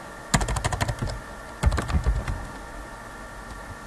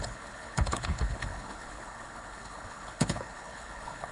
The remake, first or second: second